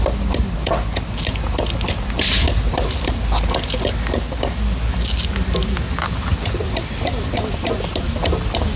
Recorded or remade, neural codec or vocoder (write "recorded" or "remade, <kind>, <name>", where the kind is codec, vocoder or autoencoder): recorded